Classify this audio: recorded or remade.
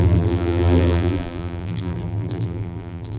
remade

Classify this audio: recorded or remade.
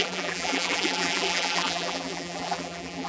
remade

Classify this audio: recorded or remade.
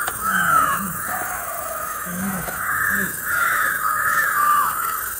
remade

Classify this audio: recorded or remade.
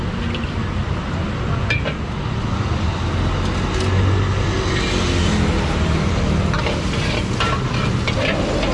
recorded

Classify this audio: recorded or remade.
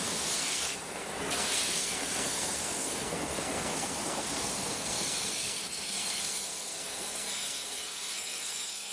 remade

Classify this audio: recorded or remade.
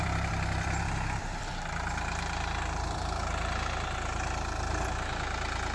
remade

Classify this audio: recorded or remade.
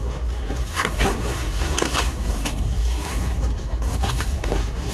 remade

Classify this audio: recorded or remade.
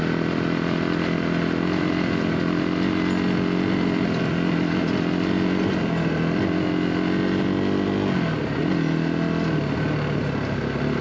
recorded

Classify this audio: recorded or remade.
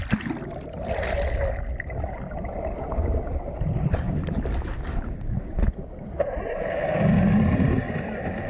recorded